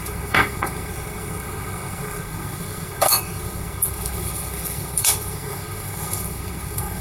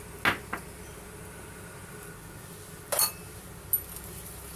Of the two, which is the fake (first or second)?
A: first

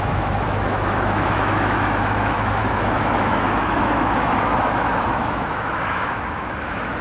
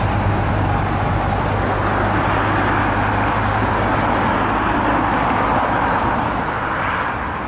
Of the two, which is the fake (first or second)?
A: first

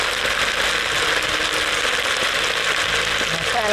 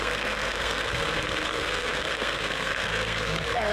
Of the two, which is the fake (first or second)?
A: second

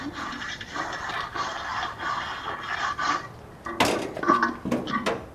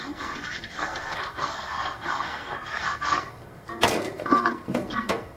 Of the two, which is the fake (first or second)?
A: second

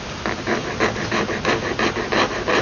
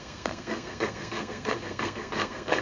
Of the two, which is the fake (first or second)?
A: second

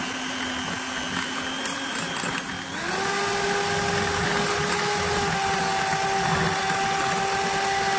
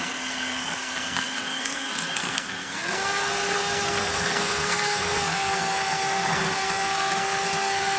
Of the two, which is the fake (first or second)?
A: second